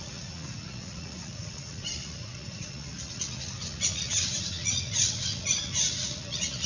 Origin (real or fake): fake